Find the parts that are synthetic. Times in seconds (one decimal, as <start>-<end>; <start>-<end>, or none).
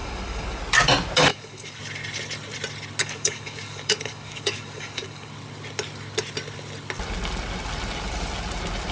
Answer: 0.0-0.6; 1.3-1.8; 3.0-5.3